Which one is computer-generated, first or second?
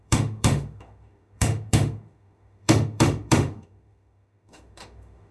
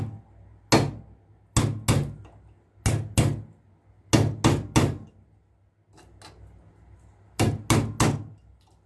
first